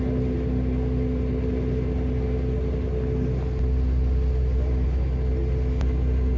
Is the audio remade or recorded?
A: recorded